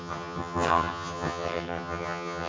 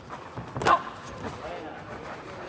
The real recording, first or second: second